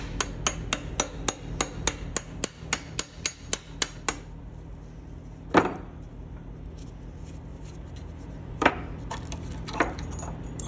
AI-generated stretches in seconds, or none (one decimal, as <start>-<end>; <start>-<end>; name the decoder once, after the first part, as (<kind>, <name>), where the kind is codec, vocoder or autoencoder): 7.5-8.7 (vocoder, BigVGAN v2)